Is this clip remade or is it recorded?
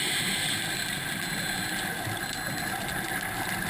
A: recorded